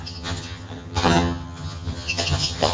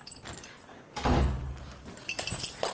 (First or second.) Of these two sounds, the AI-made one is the first